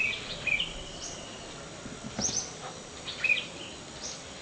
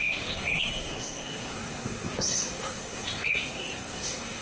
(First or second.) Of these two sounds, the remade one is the second